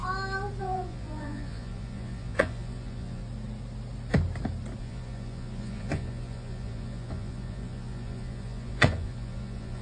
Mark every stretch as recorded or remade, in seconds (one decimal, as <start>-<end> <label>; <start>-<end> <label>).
0.0-0.6 recorded; 0.6-3.2 remade; 3.2-4.8 recorded; 4.8-9.8 remade